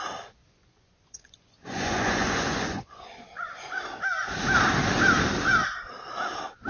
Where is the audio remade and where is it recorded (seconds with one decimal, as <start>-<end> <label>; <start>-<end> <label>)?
0.0-0.4 recorded; 0.4-3.8 remade; 3.8-6.7 recorded